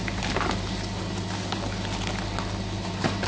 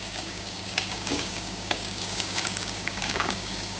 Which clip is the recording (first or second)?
first